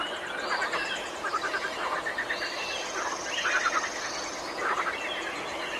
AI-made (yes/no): no